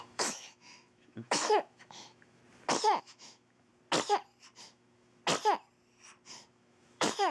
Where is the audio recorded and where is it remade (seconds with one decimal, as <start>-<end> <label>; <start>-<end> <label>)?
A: 0.0-2.4 remade; 2.4-3.0 recorded; 3.0-3.7 remade; 3.7-4.6 recorded; 4.6-5.2 remade; 5.2-6.5 recorded; 6.5-7.3 remade

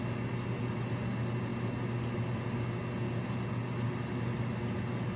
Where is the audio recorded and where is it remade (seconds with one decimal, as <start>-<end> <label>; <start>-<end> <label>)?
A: 0.0-5.2 recorded

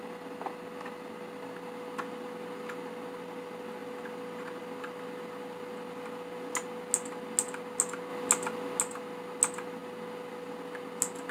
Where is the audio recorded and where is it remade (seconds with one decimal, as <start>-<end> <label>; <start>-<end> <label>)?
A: 0.0-11.3 recorded

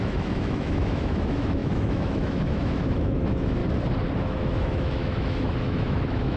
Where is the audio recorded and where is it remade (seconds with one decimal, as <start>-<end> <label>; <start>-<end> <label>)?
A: 0.0-3.6 remade; 3.6-4.2 recorded; 4.2-6.4 remade

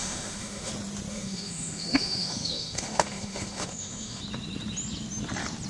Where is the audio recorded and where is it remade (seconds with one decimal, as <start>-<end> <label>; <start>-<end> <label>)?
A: 0.0-0.7 remade; 0.7-1.1 recorded; 1.1-4.2 remade; 4.2-5.7 recorded

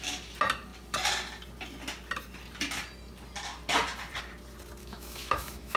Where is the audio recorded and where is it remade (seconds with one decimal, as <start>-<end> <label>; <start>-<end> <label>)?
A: 0.0-4.8 recorded; 4.8-5.8 remade

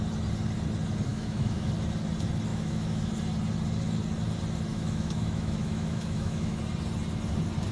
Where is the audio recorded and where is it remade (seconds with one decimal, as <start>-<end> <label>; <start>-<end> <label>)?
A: 0.0-1.1 recorded; 1.1-1.7 remade; 1.7-2.5 recorded; 2.5-3.1 remade; 3.1-4.7 recorded; 4.7-6.6 remade; 6.6-7.7 recorded